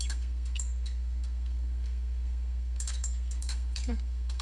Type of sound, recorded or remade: remade